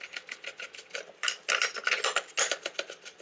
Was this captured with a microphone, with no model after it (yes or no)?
yes